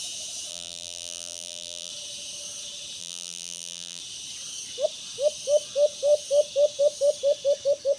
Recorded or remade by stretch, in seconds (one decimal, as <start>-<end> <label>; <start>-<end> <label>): 0.0-0.5 recorded; 0.5-1.9 remade; 1.9-3.0 recorded; 3.0-4.0 remade; 4.0-8.0 recorded